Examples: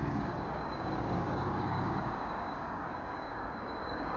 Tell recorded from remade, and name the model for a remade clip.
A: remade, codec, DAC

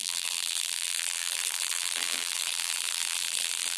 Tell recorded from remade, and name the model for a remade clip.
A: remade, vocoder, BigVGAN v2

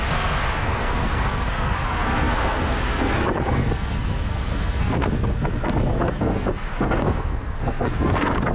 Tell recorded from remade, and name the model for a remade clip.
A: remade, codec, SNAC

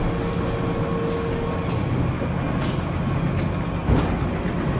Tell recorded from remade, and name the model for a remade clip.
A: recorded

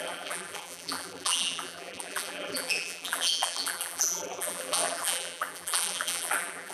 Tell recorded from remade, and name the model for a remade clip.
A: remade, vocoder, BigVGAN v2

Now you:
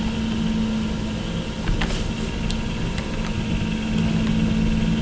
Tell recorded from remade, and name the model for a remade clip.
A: recorded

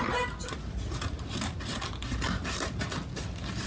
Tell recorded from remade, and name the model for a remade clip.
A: recorded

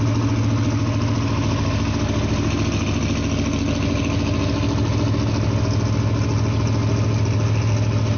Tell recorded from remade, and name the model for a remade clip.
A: recorded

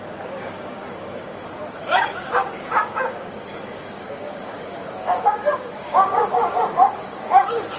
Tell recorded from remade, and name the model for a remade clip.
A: remade, codec, DAC